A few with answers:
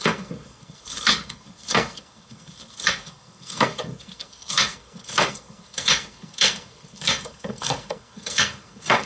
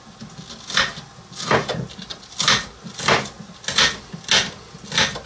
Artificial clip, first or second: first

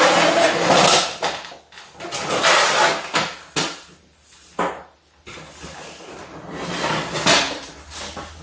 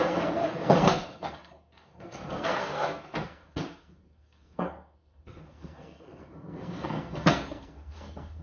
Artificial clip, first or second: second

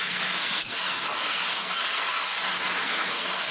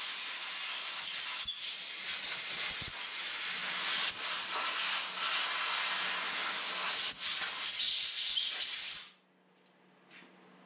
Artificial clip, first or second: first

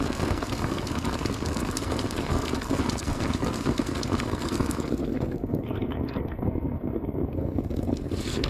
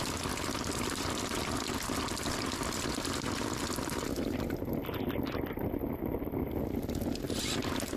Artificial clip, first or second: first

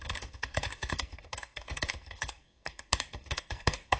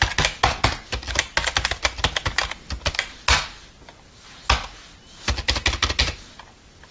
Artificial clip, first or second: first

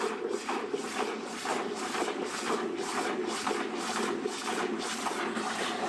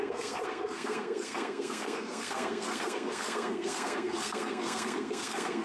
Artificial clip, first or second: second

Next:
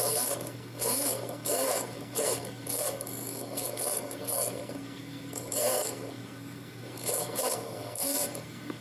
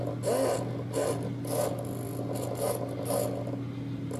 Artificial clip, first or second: first